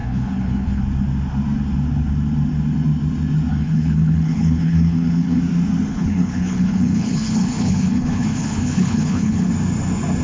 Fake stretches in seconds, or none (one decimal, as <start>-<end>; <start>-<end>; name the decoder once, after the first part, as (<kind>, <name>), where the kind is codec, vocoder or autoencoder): 0.0-0.8 (codec, HILCodec); 3.5-5.4; 5.9-9.5